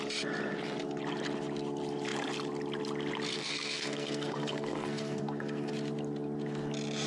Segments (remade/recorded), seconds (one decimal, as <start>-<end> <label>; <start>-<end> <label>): 0.0-3.3 recorded; 3.3-5.7 remade; 5.7-7.1 recorded